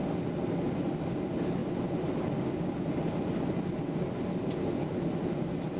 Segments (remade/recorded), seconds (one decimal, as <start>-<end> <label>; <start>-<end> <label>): 0.0-5.8 recorded